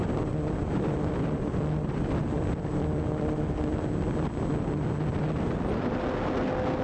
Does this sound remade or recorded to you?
recorded